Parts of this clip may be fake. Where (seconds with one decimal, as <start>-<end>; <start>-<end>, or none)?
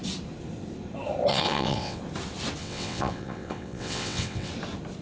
1.3-2.0; 2.6-4.5